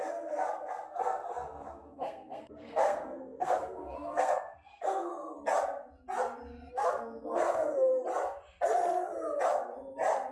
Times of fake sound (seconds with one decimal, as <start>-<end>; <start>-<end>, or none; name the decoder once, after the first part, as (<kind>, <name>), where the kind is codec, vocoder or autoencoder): 0.0-5.1 (codec, SNAC); 6.7-7.9